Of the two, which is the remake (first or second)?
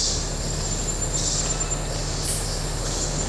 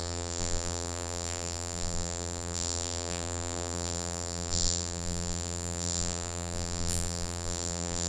second